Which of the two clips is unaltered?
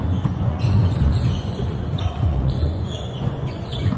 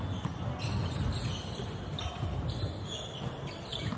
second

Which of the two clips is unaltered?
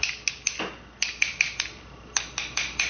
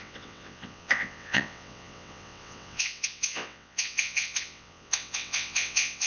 first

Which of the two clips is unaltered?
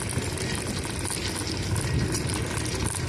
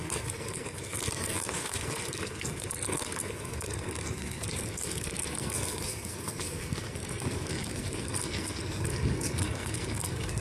first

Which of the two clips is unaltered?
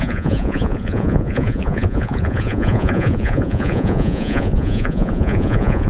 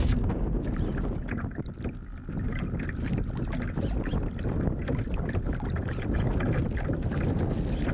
second